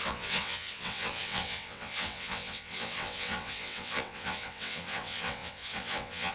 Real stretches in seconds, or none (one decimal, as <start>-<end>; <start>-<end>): none